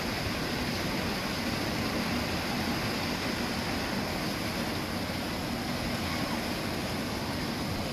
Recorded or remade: recorded